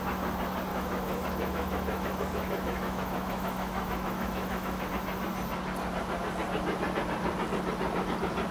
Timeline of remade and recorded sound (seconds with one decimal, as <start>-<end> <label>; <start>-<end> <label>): 0.0-0.7 recorded; 0.7-4.9 remade; 4.9-8.5 recorded